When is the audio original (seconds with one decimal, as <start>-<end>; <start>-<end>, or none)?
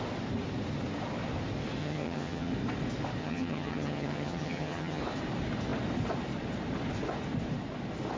0.0-1.8; 2.5-3.2; 5.0-8.2